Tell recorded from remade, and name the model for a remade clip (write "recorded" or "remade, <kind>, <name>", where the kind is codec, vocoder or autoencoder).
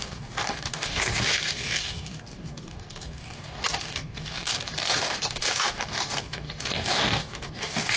remade, codec, DAC